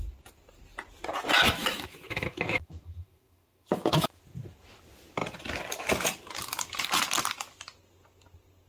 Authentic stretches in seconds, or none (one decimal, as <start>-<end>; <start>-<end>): 0.0-1.6; 4.2-8.7